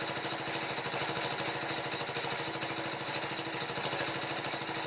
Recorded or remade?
recorded